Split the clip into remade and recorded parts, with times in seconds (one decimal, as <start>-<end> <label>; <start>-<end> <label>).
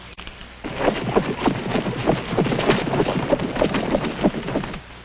0.0-5.0 recorded